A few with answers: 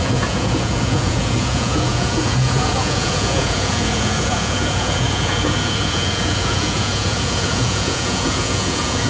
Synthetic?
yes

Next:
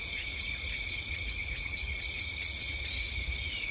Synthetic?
yes